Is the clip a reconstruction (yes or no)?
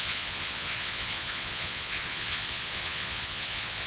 yes